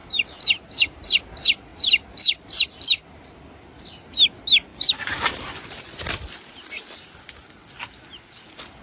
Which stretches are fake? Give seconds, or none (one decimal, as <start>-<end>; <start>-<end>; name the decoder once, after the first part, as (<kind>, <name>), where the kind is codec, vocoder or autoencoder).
0.0-1.2 (vocoder, BigVGAN v2); 4.7-5.4